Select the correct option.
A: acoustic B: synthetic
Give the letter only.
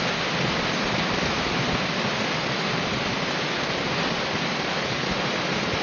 A